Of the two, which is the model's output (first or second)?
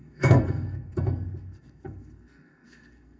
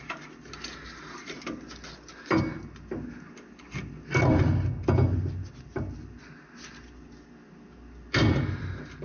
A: first